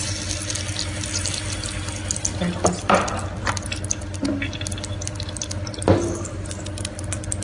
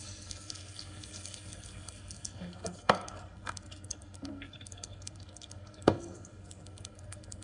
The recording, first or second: first